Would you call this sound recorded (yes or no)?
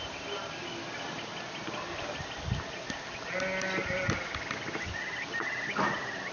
yes